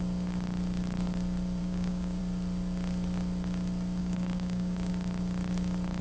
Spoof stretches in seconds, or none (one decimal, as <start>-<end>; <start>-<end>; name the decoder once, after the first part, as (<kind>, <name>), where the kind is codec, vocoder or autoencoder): 1.6-2.2 (codec, DAC); 4.0-4.9